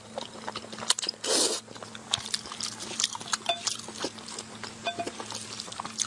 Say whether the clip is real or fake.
real